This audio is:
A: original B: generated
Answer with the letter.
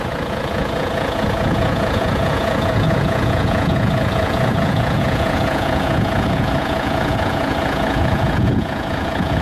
B